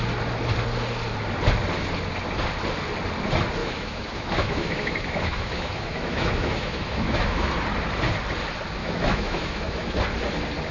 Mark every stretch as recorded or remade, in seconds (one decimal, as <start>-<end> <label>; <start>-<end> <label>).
0.0-3.6 recorded; 3.6-7.5 remade; 7.5-8.8 recorded; 8.8-10.0 remade; 10.0-10.7 recorded